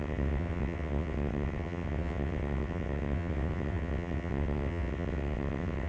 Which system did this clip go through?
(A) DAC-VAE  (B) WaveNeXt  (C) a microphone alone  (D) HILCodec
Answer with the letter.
B